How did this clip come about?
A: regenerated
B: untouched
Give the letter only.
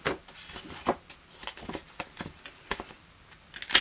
B